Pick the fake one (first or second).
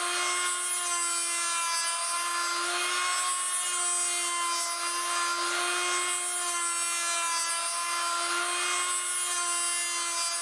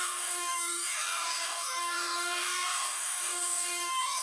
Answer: second